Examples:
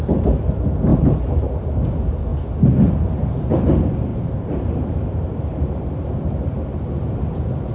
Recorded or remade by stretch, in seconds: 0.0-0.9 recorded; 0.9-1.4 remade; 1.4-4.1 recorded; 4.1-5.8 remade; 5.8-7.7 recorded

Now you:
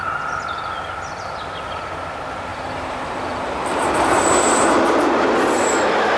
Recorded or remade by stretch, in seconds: 0.0-2.5 recorded; 2.5-3.9 remade; 3.9-6.2 recorded

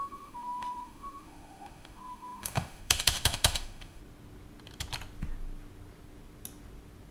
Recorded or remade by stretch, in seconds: 0.0-4.0 remade; 4.0-7.1 recorded

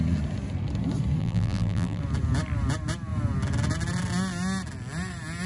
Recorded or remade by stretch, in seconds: 0.0-1.2 recorded; 1.2-2.0 remade; 2.0-5.5 recorded

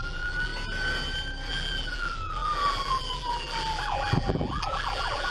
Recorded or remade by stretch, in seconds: 0.0-0.5 remade; 0.5-1.5 recorded; 1.5-5.3 remade

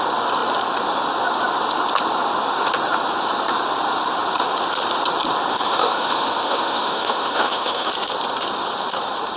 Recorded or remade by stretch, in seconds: 0.0-5.5 recorded; 5.5-7.9 remade; 7.9-9.4 recorded

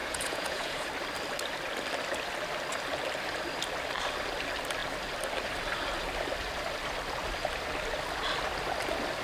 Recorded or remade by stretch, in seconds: 0.0-0.9 remade; 0.9-9.2 recorded